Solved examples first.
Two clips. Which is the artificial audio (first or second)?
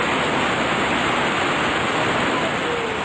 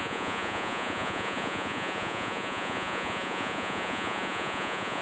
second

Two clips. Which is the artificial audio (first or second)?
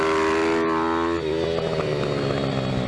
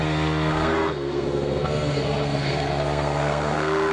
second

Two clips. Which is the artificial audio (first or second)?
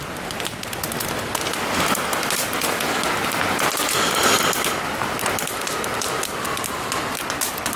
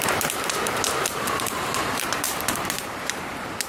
second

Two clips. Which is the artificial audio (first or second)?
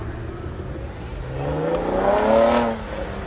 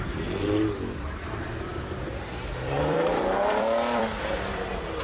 second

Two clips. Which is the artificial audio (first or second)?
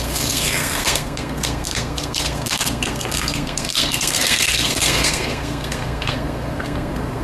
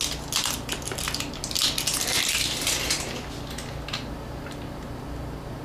first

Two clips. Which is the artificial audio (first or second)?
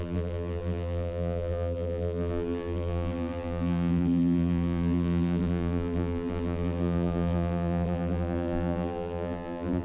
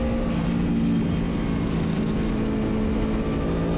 first